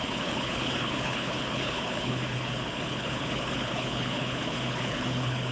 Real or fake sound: fake